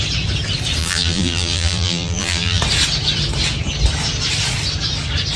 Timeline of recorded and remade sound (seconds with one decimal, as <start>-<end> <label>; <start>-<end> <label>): 0.0-0.8 recorded; 0.8-2.6 remade; 2.6-5.4 recorded